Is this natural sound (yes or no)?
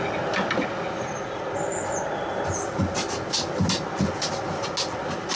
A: yes